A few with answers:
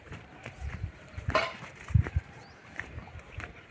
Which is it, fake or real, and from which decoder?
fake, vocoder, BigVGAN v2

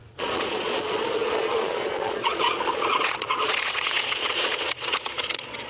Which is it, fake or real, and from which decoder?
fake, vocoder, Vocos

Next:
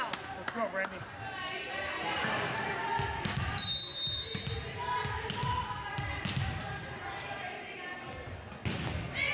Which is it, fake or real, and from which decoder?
real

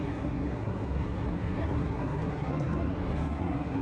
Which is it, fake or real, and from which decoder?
fake, codec, SNAC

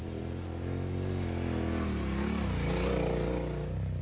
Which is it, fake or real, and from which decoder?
real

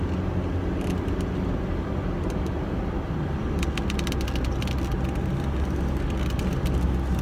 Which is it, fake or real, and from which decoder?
real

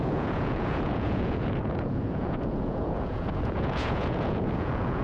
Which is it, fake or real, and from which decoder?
fake, vocoder, Vocos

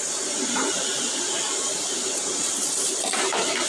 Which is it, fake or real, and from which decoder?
real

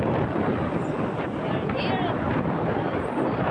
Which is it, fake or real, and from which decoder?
fake, vocoder, BigVGAN v2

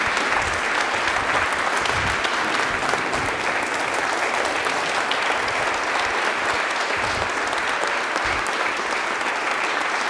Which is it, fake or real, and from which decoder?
real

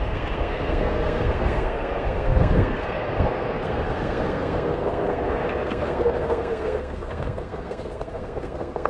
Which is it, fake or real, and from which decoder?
fake, codec, SNAC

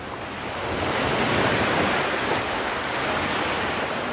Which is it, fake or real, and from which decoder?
real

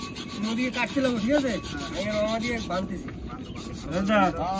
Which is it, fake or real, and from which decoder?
real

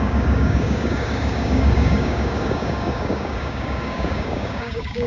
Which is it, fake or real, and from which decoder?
fake, codec, DAC